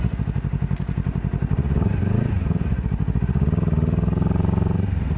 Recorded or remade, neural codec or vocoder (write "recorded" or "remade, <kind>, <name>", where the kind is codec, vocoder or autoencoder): recorded